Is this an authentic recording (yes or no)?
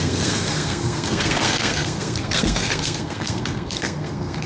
no